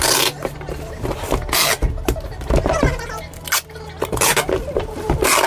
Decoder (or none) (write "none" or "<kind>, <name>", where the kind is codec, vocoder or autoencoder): none